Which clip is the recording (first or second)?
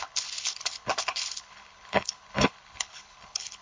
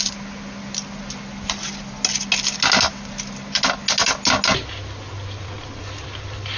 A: second